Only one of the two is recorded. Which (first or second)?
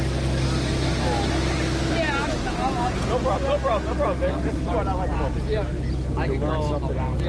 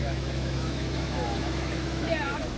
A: first